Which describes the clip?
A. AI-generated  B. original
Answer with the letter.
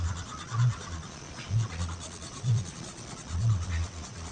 A